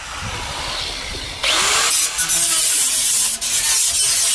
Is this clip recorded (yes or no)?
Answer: yes